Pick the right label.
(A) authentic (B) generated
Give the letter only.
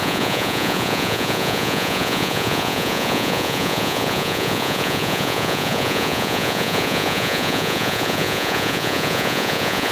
B